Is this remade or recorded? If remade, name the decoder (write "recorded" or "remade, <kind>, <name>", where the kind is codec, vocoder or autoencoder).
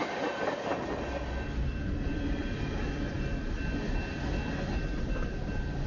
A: recorded